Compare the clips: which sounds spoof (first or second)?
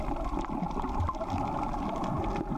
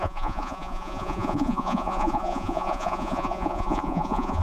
second